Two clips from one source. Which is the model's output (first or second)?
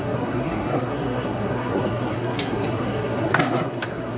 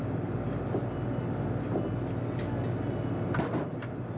first